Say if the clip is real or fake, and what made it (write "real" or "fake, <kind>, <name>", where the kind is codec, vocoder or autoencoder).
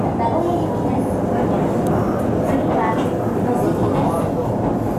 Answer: real